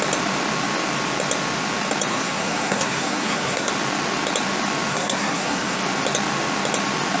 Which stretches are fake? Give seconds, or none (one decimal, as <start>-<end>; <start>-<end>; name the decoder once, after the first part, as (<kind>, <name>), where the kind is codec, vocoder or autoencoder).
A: 2.1-3.7 (codec, SNAC); 4.9-5.8